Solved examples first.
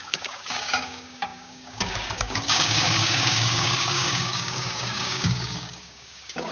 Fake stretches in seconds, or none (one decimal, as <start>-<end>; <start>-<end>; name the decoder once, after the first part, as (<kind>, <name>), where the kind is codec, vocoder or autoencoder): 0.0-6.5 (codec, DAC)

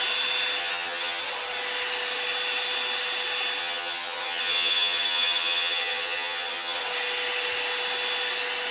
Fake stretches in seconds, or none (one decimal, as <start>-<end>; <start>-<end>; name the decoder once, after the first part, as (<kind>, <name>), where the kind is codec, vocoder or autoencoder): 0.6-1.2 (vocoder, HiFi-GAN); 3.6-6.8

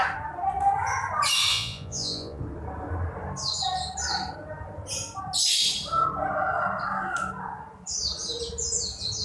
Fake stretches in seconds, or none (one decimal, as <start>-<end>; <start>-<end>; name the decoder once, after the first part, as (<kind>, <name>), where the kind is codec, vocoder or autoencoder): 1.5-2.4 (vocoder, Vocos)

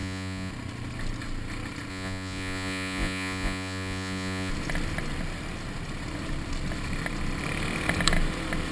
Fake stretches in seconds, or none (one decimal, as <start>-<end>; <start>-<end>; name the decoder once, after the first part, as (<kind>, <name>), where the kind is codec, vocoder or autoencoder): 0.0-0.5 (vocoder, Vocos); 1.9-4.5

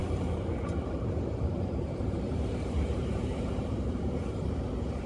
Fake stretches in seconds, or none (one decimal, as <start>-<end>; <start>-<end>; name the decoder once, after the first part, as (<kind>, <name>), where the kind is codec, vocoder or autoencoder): 0.0-5.1 (vocoder, BigVGAN v2)

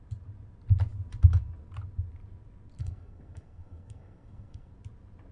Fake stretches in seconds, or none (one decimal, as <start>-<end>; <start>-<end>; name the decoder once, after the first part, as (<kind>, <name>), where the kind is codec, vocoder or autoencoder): 2.8-4.7 (codec, SNAC)

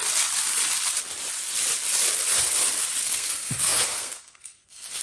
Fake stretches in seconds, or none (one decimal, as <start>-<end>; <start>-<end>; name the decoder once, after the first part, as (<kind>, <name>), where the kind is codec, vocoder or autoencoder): 3.0-5.0 (codec, SNAC)

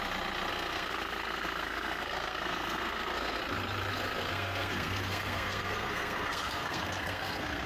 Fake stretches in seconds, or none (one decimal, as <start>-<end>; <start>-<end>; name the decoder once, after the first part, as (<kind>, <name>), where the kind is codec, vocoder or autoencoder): 0.5-3.4 (codec, SNAC); 3.9-7.7